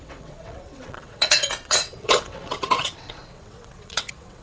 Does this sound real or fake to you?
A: fake